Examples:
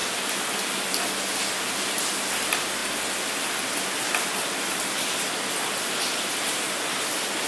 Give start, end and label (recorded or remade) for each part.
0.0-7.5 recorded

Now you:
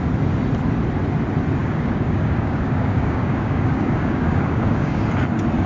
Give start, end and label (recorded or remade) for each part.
0.0-1.6 recorded; 1.6-5.0 remade; 5.0-5.7 recorded